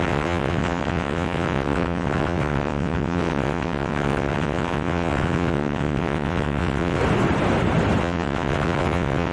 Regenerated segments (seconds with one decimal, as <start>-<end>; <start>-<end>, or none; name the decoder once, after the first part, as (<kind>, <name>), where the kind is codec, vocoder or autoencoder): 0.0-7.0 (vocoder, WaveNeXt); 8.0-9.3